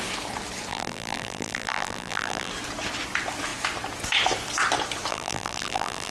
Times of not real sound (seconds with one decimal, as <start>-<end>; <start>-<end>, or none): 0.7-2.5; 5.1-6.1